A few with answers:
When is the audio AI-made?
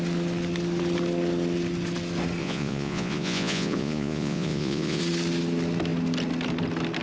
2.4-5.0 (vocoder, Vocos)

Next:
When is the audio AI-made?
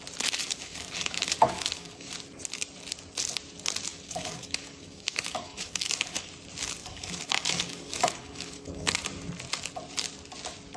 0.4-2.1 (codec, DAC); 3.9-6.3; 6.8-8.9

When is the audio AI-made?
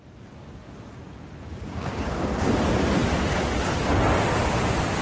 1.4-2.5 (codec, DAC)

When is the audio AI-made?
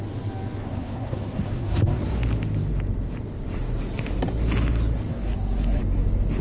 0.6-2.0 (codec, SNAC); 5.1-5.8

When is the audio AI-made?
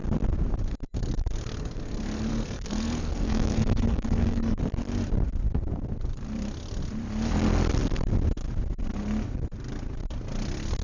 2.3-4.6 (codec, SNAC)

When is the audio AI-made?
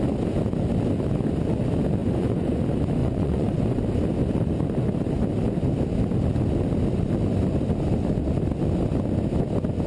2.0-2.6 (vocoder, Vocos); 3.0-3.8